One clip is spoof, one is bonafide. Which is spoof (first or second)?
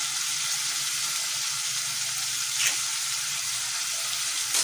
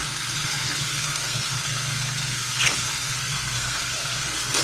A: second